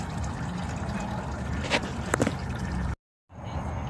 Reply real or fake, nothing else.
real